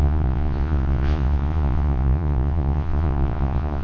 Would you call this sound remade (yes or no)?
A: yes